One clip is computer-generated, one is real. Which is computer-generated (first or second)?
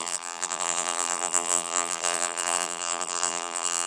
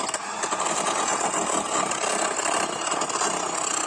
first